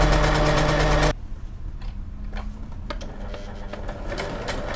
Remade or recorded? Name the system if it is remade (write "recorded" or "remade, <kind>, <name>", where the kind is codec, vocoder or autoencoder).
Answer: recorded